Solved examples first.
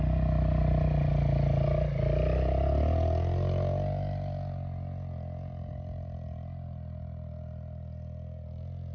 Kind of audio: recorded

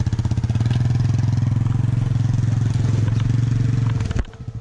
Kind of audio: recorded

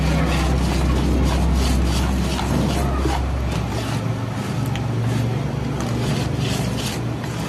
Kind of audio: recorded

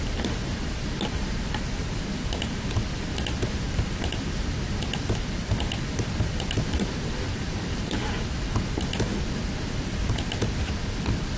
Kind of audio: recorded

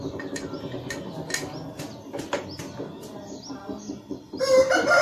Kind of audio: recorded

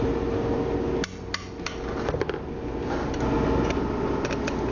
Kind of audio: recorded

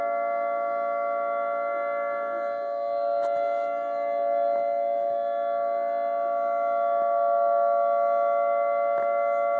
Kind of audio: recorded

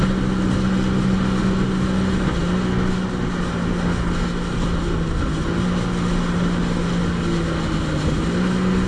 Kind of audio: recorded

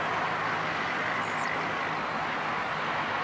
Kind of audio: recorded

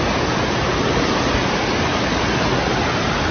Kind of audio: recorded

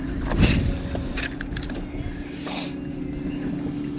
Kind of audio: recorded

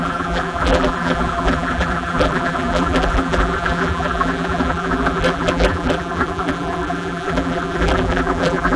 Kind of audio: remade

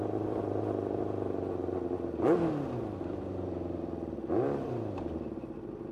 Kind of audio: recorded